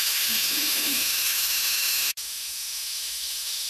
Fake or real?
fake